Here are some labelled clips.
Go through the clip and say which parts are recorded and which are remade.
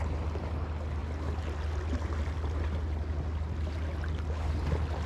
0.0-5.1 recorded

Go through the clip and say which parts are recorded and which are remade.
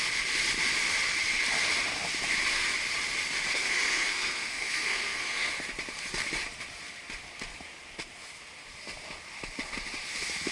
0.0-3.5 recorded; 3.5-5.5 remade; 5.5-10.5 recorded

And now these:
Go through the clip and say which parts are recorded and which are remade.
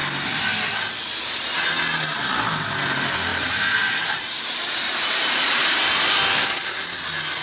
0.0-3.3 recorded; 3.3-5.9 remade; 5.9-7.4 recorded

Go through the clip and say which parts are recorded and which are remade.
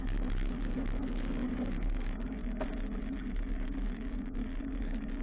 0.0-2.4 remade; 2.4-3.0 recorded; 3.0-5.2 remade